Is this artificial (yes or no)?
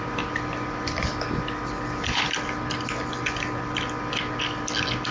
no